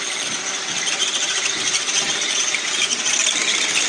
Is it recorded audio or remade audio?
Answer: remade